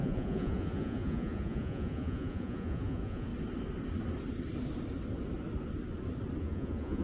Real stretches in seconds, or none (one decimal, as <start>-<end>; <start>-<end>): 3.3-6.4